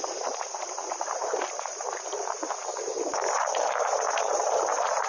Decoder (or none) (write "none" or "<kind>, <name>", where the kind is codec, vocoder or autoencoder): vocoder, BigVGAN v2